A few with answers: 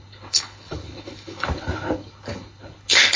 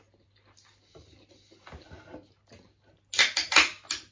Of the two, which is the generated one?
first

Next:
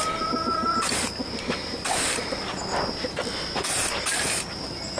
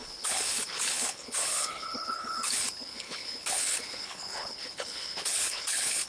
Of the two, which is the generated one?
second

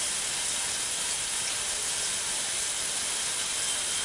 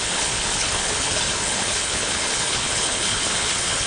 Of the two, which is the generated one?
second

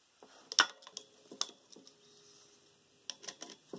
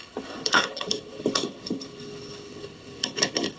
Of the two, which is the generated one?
second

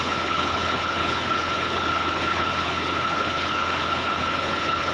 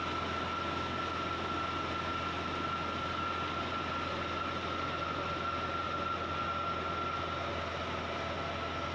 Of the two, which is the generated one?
first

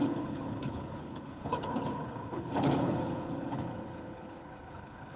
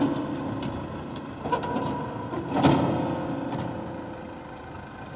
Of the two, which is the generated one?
first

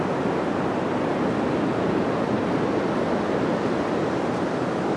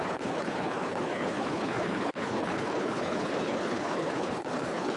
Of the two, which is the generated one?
second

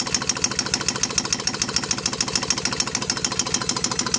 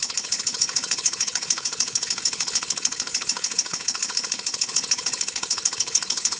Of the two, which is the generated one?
second